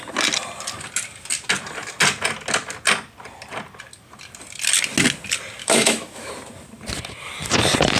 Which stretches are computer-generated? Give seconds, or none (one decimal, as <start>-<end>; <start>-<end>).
5.6-6.3